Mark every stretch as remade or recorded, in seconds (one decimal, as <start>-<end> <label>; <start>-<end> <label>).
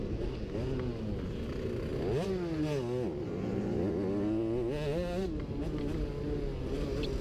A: 0.0-7.2 recorded